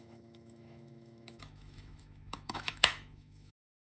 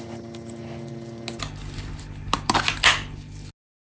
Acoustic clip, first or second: second